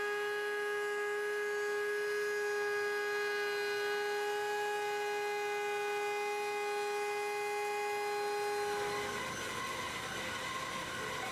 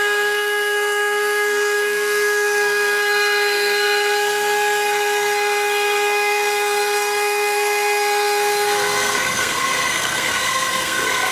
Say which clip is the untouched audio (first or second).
first